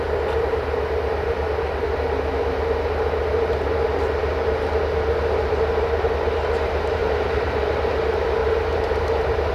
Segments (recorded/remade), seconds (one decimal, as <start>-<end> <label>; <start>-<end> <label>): 0.0-7.0 recorded; 7.0-7.9 remade; 7.9-8.4 recorded; 8.4-9.5 remade